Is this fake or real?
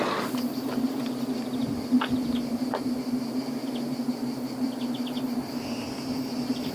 real